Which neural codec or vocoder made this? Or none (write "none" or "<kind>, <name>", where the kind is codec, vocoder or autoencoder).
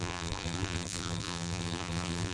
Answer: vocoder, BigVGAN v2